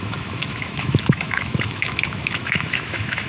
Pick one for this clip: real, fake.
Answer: fake